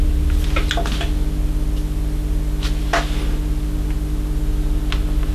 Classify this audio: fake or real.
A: real